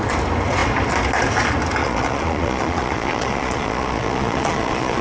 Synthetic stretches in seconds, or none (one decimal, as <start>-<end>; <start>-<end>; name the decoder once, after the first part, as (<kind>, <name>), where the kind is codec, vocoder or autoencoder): 1.8-5.0 (vocoder, Vocos)